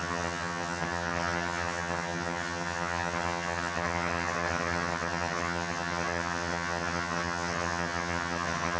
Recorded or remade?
remade